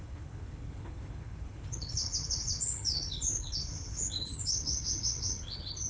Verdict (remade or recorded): remade